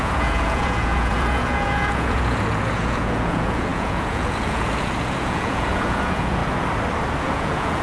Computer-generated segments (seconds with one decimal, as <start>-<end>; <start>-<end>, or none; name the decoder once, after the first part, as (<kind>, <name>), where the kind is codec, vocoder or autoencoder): 0.0-6.4 (vocoder, Vocos); 7.2-7.8